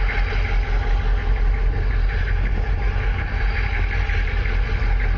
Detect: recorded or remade recorded